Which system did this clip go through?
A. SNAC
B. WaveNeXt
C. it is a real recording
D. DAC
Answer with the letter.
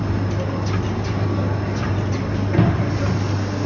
C